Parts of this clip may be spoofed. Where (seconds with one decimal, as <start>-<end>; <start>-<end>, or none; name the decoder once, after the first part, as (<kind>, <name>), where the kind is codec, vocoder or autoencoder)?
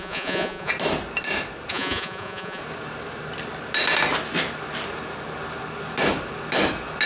0.0-0.7 (vocoder, Vocos); 1.7-2.6